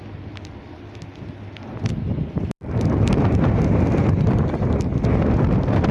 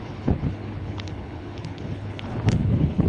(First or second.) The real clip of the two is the first